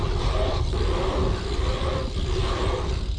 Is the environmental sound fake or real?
real